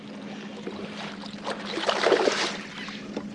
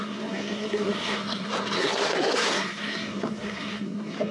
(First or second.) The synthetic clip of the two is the second